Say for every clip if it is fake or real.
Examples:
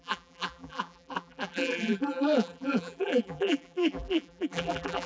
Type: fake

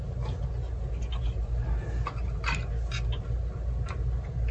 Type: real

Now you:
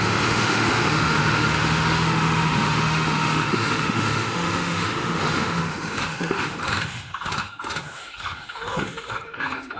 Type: fake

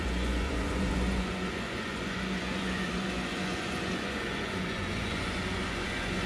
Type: fake